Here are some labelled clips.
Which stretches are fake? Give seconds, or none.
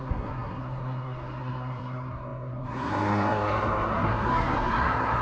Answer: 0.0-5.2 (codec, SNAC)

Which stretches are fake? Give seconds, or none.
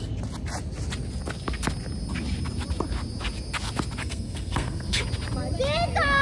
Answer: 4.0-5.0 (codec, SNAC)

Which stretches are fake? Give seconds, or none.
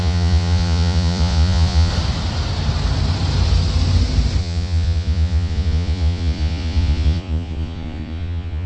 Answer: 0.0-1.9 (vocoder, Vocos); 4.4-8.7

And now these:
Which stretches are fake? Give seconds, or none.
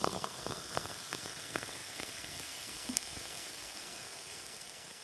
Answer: 0.0-5.0 (codec, SNAC)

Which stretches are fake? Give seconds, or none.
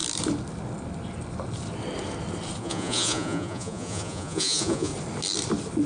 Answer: 2.6-4.9 (vocoder, Vocos)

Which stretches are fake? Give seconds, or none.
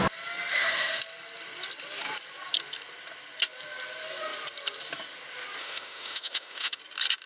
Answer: 0.5-1.0 (autoencoder, DAC-VAE); 5.6-6.8